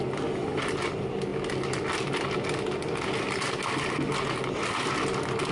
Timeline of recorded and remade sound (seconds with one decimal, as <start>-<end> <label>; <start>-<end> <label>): 0.0-5.5 recorded